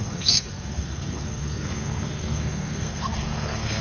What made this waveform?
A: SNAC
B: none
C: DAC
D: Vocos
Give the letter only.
A